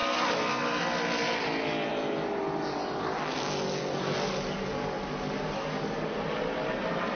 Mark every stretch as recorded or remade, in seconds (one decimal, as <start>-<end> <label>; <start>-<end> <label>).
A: 0.0-7.1 recorded